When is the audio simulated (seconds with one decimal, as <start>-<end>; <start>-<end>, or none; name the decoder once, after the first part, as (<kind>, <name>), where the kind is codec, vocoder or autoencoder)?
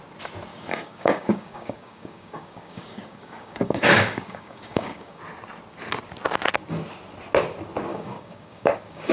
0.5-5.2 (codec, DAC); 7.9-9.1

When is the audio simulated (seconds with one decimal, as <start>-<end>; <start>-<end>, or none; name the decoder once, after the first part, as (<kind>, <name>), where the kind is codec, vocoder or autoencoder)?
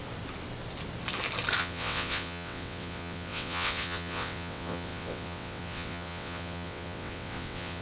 1.6-7.8 (vocoder, WaveNeXt)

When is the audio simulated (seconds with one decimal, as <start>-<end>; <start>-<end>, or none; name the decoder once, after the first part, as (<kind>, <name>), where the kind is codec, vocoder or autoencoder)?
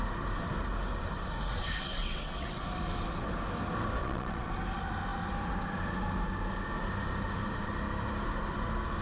2.0-2.6 (vocoder, WaveNeXt); 4.0-4.5